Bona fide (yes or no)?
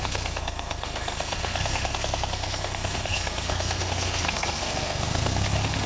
no